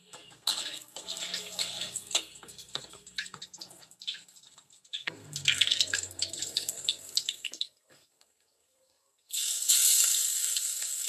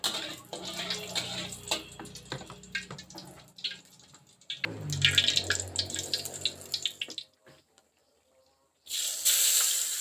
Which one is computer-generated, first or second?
first